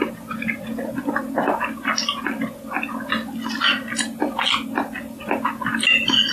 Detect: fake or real real